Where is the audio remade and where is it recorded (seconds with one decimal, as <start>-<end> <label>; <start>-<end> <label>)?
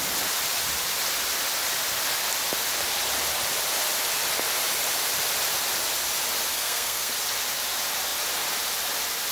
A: 0.0-6.5 recorded; 6.5-7.1 remade; 7.1-9.3 recorded